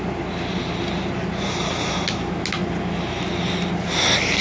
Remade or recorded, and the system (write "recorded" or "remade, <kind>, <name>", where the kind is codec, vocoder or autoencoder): recorded